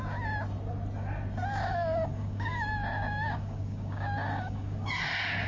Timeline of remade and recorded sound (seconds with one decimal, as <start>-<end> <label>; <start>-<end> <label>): 0.0-1.7 recorded; 1.7-4.9 remade; 4.9-5.5 recorded